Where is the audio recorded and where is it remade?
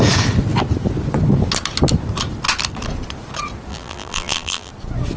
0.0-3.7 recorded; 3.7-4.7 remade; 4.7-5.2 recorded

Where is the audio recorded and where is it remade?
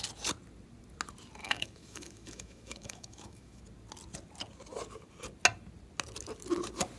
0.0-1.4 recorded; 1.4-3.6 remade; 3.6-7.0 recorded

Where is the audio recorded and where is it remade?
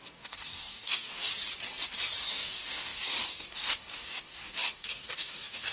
0.0-1.3 remade; 1.3-2.2 recorded; 2.2-5.7 remade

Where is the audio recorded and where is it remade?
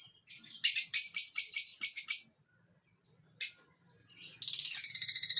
0.0-1.7 remade; 1.7-4.9 recorded; 4.9-5.4 remade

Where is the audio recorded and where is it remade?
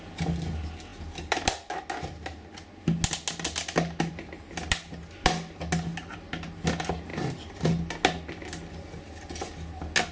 0.0-10.1 recorded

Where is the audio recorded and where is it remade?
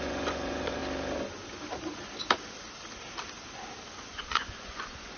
0.0-0.8 remade; 0.8-3.9 recorded; 3.9-5.2 remade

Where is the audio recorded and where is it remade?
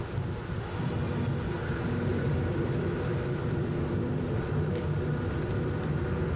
0.0-2.1 recorded; 2.1-4.7 remade; 4.7-6.4 recorded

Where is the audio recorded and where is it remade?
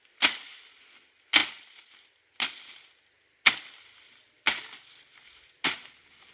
0.0-6.3 recorded